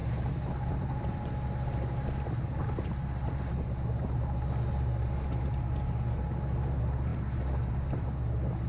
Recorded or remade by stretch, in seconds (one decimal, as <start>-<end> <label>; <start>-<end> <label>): 0.0-8.7 recorded

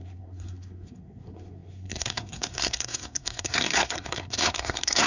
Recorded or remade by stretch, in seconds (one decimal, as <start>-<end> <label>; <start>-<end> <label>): 0.0-5.1 remade

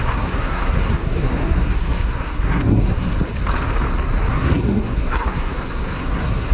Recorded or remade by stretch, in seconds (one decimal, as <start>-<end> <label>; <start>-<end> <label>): 0.0-3.1 remade; 3.1-4.3 recorded; 4.3-6.5 remade

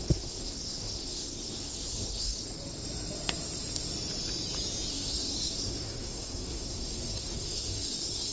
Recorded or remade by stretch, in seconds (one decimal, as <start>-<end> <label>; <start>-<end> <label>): 0.0-2.4 remade; 2.4-4.9 recorded; 4.9-8.3 remade